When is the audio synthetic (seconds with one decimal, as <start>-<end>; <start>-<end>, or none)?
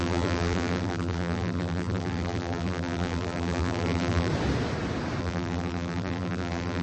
0.0-4.3; 5.2-6.8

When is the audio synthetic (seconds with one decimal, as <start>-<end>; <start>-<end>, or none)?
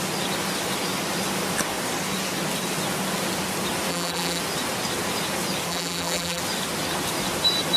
3.9-4.4; 5.7-6.4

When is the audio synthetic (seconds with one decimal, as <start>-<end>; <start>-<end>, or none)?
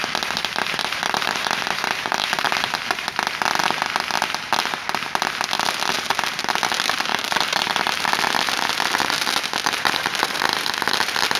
0.4-2.7; 7.1-8.1